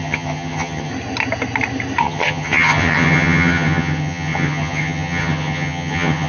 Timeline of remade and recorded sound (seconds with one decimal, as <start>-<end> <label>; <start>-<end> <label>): 0.0-0.9 remade; 0.9-2.0 recorded; 2.0-6.3 remade